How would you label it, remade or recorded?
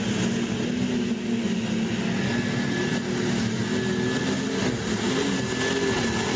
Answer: recorded